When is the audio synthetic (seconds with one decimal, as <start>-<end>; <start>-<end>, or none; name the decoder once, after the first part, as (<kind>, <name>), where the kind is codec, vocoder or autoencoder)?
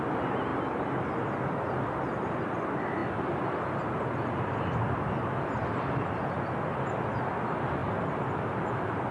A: 7.8-8.4 (vocoder, BigVGAN v2)